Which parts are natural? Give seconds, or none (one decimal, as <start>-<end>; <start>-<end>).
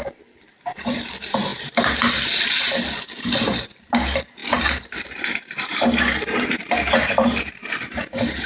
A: none